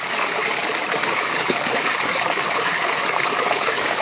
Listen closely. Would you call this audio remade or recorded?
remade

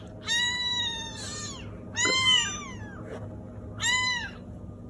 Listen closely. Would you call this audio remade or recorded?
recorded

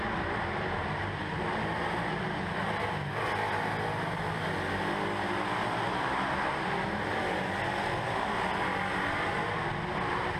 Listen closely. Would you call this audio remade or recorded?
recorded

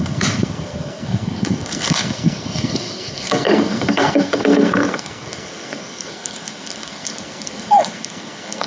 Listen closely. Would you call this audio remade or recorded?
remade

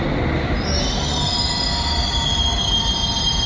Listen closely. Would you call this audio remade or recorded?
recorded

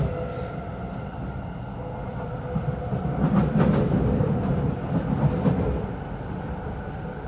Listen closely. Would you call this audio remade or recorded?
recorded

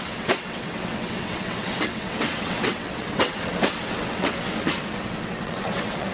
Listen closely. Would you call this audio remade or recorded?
remade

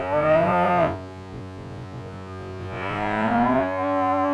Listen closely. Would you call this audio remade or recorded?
remade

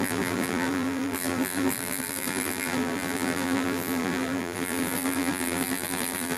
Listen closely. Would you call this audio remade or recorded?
remade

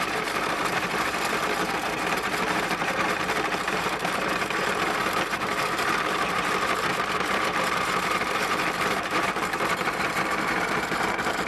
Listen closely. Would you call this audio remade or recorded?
remade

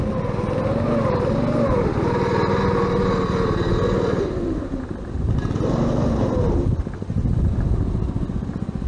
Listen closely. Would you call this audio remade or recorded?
recorded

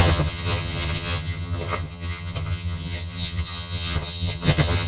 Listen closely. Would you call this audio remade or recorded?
remade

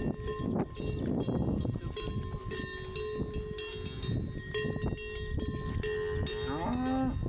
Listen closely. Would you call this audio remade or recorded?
recorded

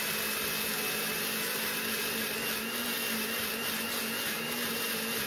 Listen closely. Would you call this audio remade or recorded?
recorded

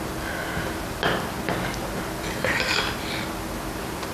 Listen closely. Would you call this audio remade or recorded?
recorded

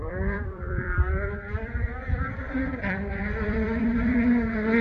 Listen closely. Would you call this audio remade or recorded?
remade